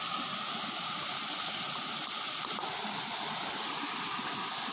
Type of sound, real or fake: real